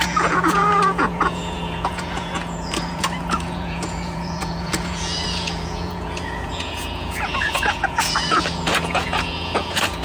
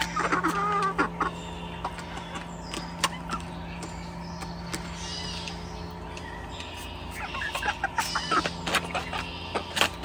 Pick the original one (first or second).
second